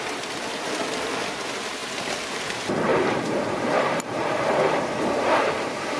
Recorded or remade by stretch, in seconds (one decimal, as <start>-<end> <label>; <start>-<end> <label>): 0.0-2.9 recorded; 2.9-6.0 remade